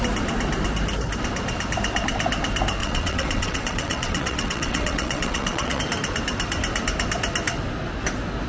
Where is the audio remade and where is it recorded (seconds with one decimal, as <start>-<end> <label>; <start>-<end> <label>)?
0.0-2.8 recorded; 2.8-5.8 remade; 5.8-8.5 recorded